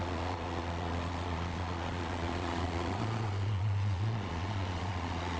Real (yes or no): no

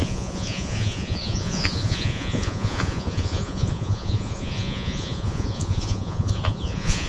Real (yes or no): no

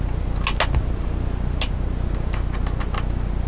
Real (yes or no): yes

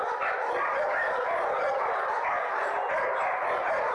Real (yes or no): yes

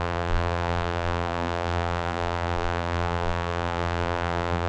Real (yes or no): no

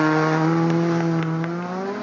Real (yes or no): yes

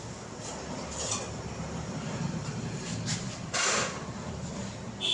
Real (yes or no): no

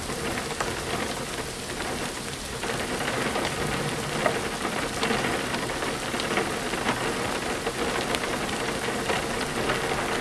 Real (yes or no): yes